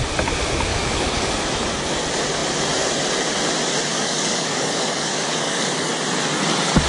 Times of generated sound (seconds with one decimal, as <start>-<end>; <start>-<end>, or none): 0.7-1.3; 3.9-5.9